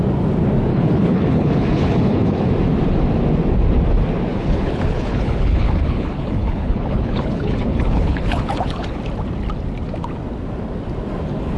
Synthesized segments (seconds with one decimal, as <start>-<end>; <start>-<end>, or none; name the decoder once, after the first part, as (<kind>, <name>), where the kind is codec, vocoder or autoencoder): 0.7-2.5 (codec, HILCodec); 4.3-9.0

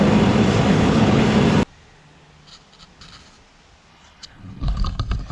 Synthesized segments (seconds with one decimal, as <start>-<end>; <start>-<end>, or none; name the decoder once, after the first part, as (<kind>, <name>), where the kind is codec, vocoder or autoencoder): 0.7-1.2 (codec, HILCodec); 3.9-4.8

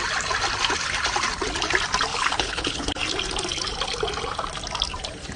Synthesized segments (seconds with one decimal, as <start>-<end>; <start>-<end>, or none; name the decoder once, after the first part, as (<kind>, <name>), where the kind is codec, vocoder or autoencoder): 2.1-2.9 (codec, HILCodec)

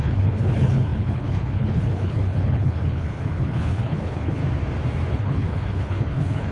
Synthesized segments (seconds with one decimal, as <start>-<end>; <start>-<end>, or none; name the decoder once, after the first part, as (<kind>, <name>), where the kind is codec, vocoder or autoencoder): 0.0-4.4 (codec, HILCodec); 5.1-6.5

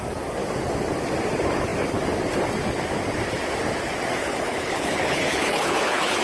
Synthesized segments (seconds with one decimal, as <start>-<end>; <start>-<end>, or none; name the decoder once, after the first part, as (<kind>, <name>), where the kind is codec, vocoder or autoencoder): 4.2-6.2 (codec, HILCodec)

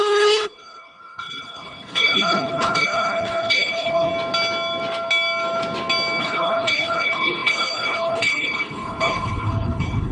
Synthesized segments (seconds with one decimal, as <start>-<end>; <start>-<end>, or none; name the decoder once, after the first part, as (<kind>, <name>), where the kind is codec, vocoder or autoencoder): 0.0-4.1 (codec, HILCodec); 6.2-10.1

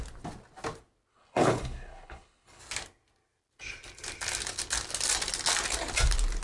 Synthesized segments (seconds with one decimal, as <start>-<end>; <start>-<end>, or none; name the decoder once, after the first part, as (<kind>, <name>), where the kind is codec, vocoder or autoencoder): 1.1-2.6 (codec, HILCodec)

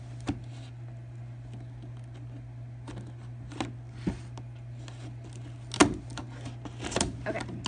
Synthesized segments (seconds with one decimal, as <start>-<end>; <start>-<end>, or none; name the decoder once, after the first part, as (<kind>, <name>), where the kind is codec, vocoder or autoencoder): none